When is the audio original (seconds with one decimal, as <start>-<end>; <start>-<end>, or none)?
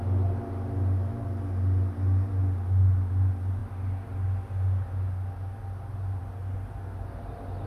0.0-7.7